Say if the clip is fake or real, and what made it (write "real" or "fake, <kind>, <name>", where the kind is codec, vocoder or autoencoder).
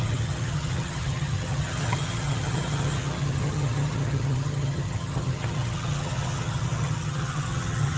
fake, vocoder, HiFi-GAN